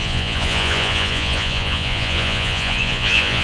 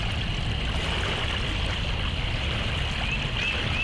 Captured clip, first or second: second